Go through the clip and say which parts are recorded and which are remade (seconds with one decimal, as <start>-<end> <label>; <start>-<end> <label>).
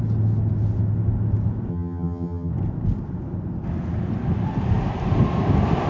0.0-1.7 recorded; 1.7-2.5 remade; 2.5-5.9 recorded